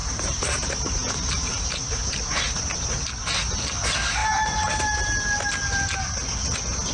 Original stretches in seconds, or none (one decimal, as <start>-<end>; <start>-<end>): 2.2-6.9